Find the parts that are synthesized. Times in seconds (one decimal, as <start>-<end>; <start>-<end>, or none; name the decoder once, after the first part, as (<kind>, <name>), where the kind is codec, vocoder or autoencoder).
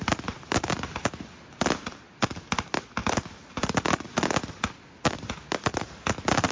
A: none